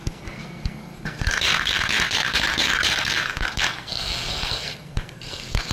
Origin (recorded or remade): remade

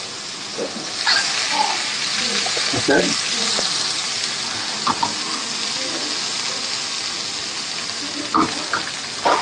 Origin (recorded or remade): recorded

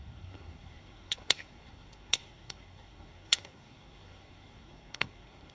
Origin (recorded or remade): remade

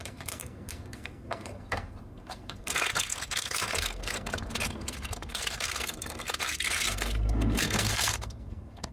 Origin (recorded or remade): remade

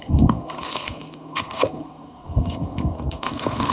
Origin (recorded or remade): remade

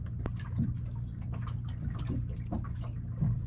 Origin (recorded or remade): recorded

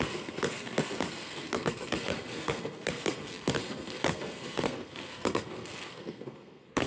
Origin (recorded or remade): remade